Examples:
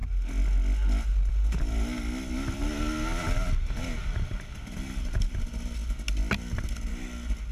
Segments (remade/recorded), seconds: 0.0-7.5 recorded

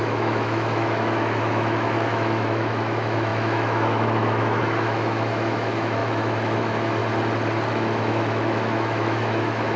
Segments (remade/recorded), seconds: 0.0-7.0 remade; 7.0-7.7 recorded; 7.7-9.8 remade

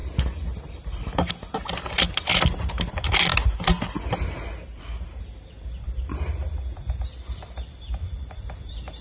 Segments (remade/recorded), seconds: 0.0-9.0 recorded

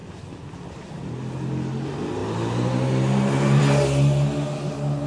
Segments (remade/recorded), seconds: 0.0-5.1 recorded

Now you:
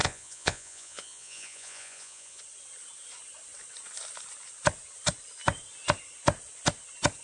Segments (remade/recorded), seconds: 0.0-2.4 remade; 2.4-7.2 recorded